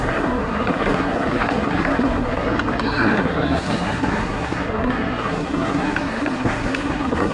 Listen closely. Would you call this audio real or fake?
fake